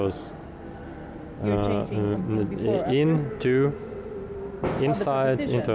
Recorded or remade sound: recorded